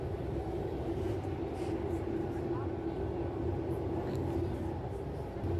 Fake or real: real